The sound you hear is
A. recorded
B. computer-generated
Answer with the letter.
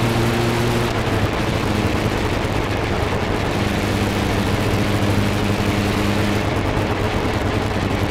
A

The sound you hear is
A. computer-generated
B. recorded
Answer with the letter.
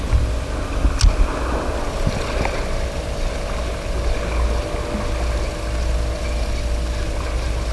B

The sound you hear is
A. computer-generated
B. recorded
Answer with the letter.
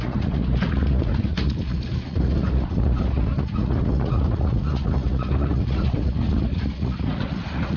A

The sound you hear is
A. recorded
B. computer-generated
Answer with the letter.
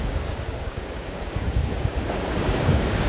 B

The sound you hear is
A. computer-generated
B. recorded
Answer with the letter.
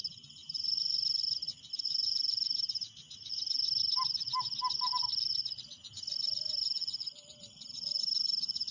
B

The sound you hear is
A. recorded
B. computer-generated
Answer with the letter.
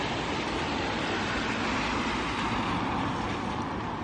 A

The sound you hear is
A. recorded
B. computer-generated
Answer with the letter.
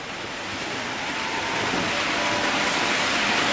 A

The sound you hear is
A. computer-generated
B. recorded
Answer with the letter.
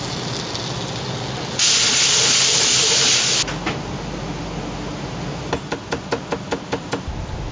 B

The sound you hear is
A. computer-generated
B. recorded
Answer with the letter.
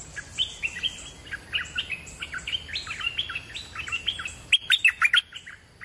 B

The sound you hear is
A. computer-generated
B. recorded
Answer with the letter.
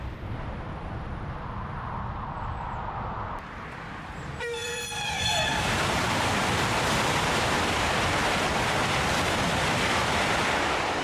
A